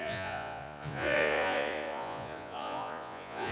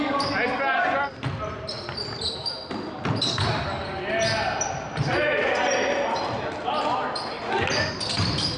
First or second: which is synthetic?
first